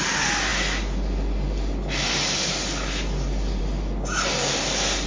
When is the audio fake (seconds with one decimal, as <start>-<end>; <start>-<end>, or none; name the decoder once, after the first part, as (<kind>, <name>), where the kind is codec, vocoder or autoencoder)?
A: none